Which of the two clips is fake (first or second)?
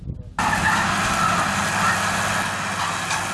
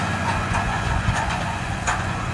second